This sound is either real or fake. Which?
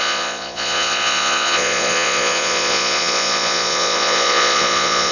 fake